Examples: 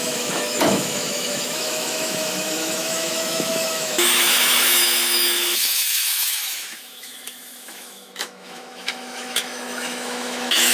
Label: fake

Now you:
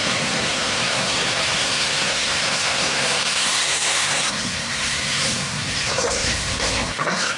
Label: fake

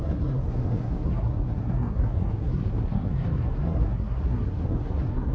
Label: fake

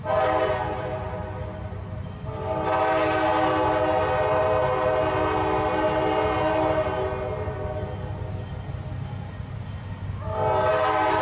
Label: real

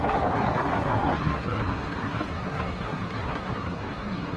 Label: fake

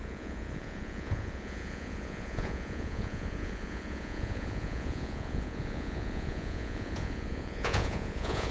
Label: fake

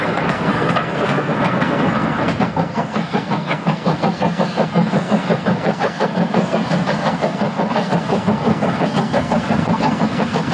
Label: fake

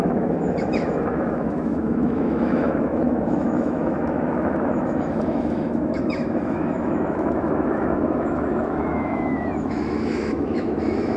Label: fake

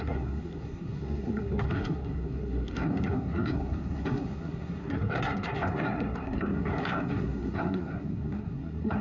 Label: fake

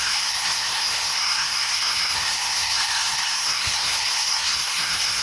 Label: fake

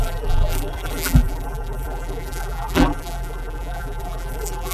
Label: fake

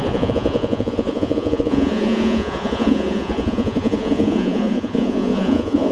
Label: fake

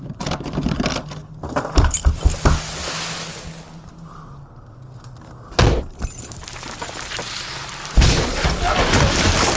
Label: real